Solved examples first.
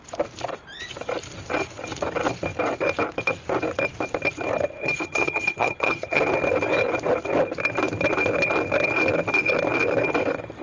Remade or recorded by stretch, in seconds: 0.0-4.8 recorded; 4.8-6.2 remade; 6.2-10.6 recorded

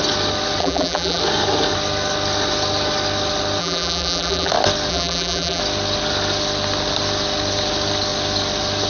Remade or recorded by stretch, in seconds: 0.0-0.6 recorded; 0.6-1.2 remade; 1.2-3.6 recorded; 3.6-4.5 remade; 4.5-4.9 recorded; 4.9-5.6 remade; 5.6-8.9 recorded

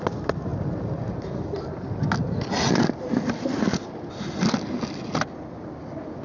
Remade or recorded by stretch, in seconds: 0.0-6.2 recorded

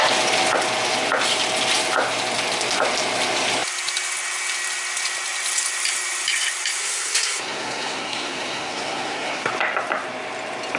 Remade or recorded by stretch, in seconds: 0.0-6.8 recorded; 6.8-9.5 remade; 9.5-10.8 recorded

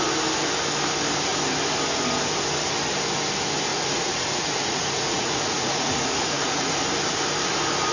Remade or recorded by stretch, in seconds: 0.0-3.7 recorded; 3.7-6.8 remade; 6.8-7.9 recorded